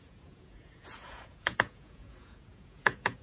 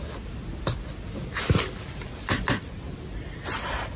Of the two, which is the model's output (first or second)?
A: first